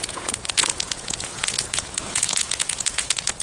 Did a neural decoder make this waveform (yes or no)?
yes